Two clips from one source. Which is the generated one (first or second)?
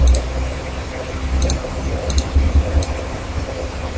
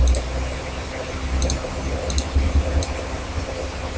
first